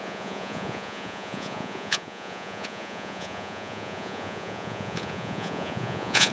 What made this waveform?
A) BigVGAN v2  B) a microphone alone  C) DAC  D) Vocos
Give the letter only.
D